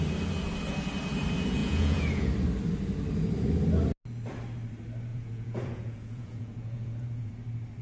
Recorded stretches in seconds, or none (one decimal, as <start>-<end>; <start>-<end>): 0.0-1.6; 2.3-5.1; 7.3-7.8